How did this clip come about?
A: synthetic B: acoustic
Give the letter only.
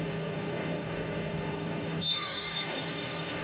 A